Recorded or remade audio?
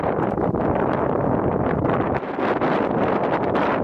recorded